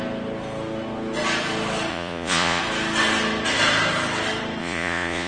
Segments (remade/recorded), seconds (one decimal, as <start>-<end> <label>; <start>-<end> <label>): 0.0-1.9 recorded; 1.9-2.6 remade; 2.6-4.6 recorded; 4.6-5.3 remade